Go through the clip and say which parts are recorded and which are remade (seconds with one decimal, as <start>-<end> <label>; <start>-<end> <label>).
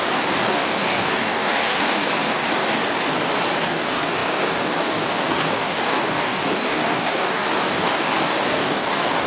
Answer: 0.0-2.8 remade; 2.8-3.6 recorded; 3.6-9.3 remade